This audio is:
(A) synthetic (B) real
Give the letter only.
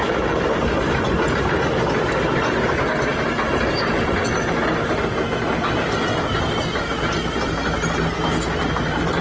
B